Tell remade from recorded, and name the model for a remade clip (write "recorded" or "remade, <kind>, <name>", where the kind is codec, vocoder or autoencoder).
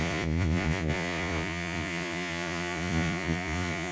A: remade, vocoder, Vocos